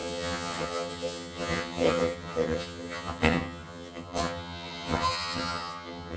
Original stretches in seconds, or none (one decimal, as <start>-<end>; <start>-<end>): none